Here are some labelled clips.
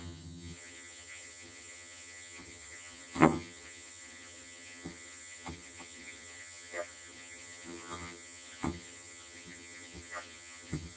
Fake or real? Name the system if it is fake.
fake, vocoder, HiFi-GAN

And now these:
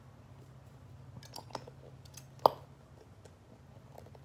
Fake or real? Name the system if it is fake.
real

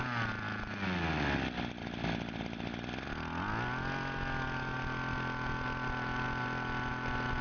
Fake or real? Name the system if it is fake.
real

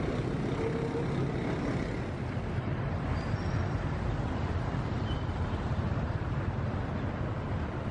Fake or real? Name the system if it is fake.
fake, vocoder, BigVGAN v2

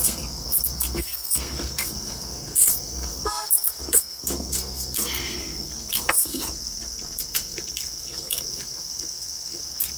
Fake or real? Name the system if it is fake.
fake, codec, SNAC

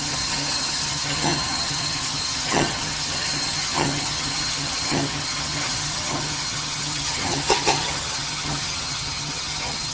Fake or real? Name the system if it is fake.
fake, vocoder, HiFi-GAN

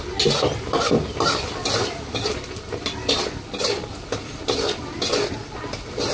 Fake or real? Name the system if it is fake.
real